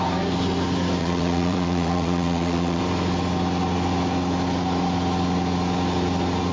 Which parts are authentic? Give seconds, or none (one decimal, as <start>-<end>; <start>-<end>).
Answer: 0.0-1.0; 2.8-6.5

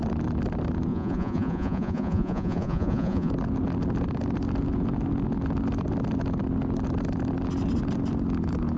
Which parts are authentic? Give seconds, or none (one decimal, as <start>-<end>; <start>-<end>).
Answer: 0.0-0.9; 3.3-8.8

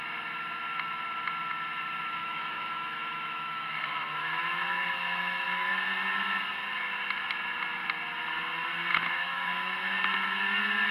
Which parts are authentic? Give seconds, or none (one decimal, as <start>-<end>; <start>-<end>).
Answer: 0.0-2.2; 5.7-8.9; 9.9-10.9